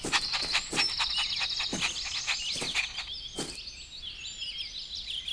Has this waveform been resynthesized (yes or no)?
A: no